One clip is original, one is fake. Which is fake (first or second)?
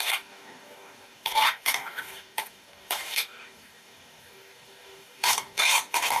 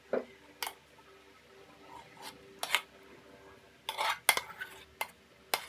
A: first